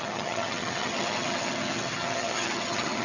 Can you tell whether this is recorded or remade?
remade